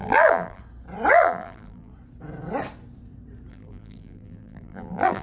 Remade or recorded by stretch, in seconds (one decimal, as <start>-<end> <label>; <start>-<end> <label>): 0.0-0.6 remade; 0.6-1.1 recorded; 1.1-1.9 remade; 1.9-3.5 recorded; 3.5-5.2 remade

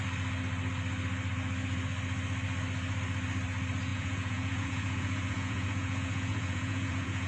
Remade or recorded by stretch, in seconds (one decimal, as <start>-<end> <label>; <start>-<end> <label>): 0.0-3.9 recorded; 3.9-7.3 remade

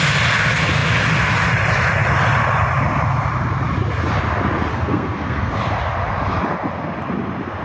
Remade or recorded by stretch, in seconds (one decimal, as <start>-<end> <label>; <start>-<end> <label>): 0.0-4.7 recorded; 4.7-5.5 remade; 5.5-7.6 recorded